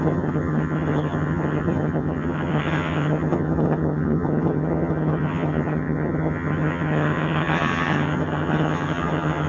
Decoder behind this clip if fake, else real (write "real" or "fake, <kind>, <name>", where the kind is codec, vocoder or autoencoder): fake, vocoder, HiFi-GAN